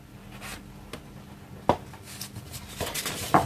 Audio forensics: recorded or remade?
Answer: recorded